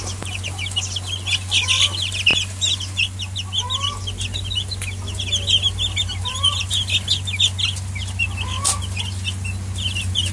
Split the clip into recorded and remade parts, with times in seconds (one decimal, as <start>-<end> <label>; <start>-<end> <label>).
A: 0.0-10.3 recorded